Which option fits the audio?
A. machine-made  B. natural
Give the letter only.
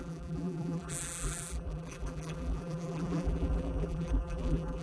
A